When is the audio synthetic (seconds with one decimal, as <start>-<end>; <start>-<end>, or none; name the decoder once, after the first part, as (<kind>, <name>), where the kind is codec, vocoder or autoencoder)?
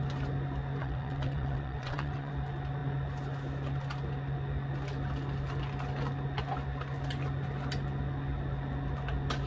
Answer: 0.8-2.3 (vocoder, WaveNeXt)